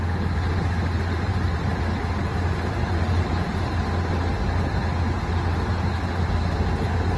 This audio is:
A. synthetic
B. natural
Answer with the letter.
B